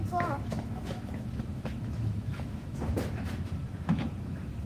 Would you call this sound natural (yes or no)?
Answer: no